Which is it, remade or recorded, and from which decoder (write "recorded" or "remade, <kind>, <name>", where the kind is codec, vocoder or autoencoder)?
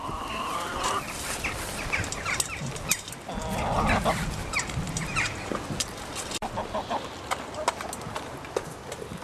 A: recorded